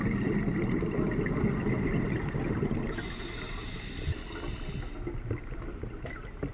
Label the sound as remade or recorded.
recorded